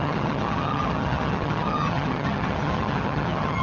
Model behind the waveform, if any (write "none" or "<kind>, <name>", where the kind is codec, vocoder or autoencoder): vocoder, HiFi-GAN